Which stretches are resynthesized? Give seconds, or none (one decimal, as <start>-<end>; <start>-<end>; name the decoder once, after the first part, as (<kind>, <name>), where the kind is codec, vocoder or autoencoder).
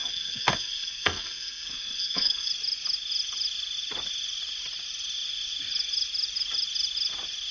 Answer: 0.0-2.5 (codec, SNAC)